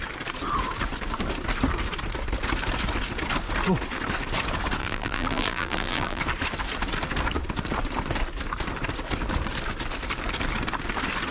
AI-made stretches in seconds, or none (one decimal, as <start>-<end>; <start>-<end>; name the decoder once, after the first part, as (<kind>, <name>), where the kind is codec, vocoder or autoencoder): 4.8-6.2 (vocoder, BigVGAN v2)